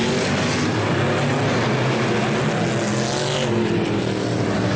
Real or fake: real